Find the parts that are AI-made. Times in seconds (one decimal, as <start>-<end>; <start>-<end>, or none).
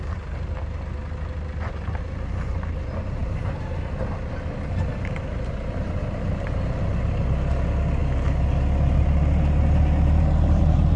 3.2-4.0; 4.9-6.8